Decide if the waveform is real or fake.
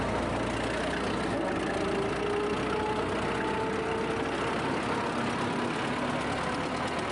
real